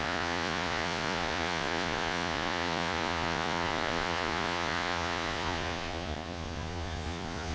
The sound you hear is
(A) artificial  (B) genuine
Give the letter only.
A